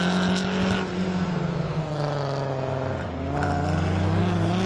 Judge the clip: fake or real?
real